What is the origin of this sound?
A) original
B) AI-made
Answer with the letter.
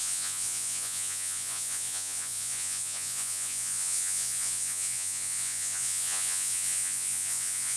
B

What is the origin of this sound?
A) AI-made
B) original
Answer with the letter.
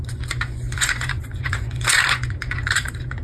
A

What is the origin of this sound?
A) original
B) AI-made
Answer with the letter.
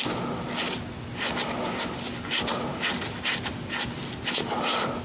A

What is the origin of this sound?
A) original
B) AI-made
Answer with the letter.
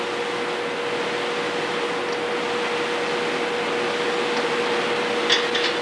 A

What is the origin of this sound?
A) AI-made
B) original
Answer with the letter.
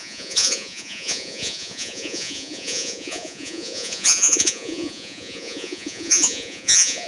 A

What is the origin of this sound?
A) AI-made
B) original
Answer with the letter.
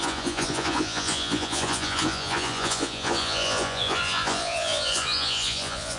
A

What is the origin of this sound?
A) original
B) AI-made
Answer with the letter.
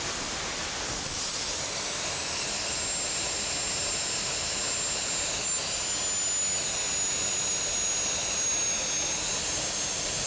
A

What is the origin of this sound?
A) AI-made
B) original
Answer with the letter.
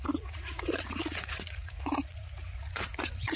A